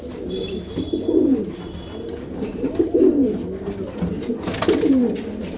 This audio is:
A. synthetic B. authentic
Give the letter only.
B